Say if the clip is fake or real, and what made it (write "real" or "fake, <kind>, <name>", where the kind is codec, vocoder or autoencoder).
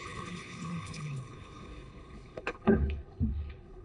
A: fake, codec, HILCodec